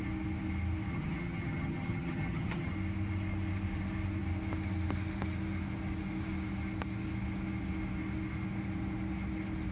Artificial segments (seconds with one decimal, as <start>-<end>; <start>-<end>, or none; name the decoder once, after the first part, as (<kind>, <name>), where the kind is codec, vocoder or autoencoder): 0.9-2.7 (vocoder, HiFi-GAN)